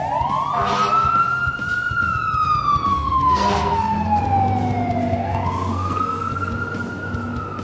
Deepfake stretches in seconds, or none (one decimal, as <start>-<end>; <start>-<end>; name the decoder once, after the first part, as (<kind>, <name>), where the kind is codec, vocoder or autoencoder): 2.9-4.2 (codec, SNAC); 5.0-6.5